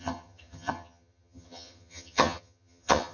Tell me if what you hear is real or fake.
fake